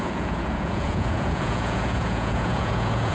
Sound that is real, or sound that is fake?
fake